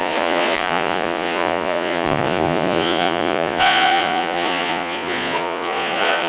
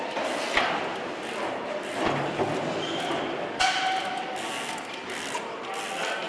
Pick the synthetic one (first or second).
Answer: first